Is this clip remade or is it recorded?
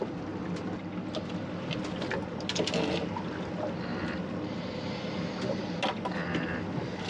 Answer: recorded